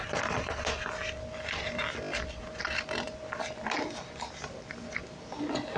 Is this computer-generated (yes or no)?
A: no